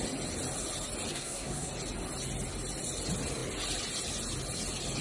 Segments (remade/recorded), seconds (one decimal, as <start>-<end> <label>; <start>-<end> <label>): 0.0-1.1 recorded; 1.1-1.7 remade; 1.7-5.0 recorded